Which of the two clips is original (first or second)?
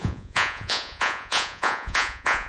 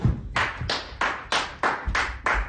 second